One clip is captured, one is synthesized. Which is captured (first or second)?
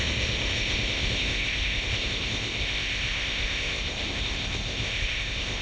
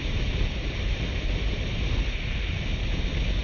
second